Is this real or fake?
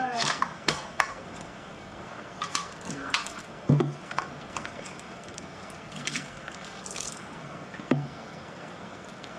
fake